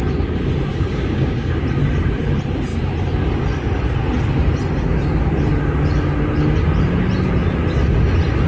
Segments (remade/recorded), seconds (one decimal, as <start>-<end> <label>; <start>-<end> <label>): 0.0-0.7 recorded; 0.7-1.6 remade; 1.6-8.5 recorded